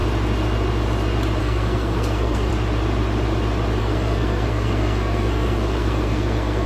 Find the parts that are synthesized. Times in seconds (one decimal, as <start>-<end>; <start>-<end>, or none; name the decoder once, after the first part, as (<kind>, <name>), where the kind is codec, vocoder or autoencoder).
1.4-2.5 (codec, SNAC); 3.8-6.7